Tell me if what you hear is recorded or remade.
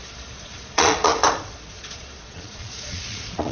remade